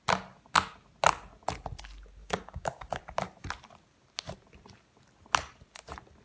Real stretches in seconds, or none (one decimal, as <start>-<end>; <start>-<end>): 0.0-2.2; 3.0-6.2